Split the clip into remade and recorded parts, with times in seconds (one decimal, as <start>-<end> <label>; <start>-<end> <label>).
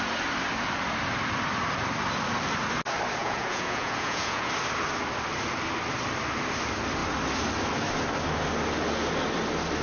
0.0-3.2 recorded; 3.2-4.5 remade; 4.5-9.8 recorded